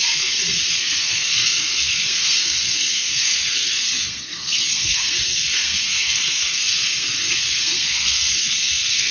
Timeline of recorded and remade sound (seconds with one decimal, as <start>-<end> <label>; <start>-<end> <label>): 0.0-9.1 remade